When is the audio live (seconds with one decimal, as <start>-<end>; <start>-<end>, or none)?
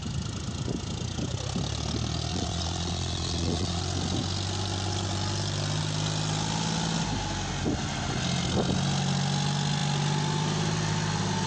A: 0.0-2.3; 3.8-11.5